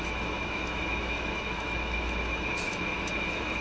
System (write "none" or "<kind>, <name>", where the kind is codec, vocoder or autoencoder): autoencoder, DAC-VAE